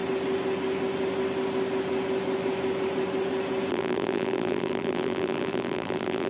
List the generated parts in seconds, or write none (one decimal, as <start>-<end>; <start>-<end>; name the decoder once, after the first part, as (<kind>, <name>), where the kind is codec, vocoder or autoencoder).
3.7-6.3 (vocoder, BigVGAN v2)